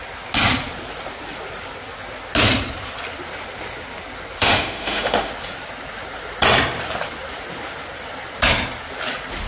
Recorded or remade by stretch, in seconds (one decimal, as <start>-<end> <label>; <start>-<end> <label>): 0.0-4.4 recorded; 4.4-5.3 remade; 5.3-9.5 recorded